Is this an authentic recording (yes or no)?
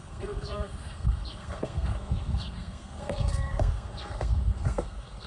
no